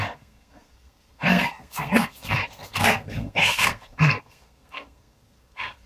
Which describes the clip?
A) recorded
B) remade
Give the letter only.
B